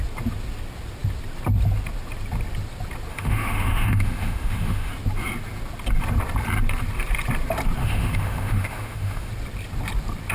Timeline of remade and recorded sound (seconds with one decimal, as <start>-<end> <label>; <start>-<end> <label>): 0.0-3.1 recorded; 3.1-4.9 remade; 4.9-7.8 recorded; 7.8-9.3 remade; 9.3-10.3 recorded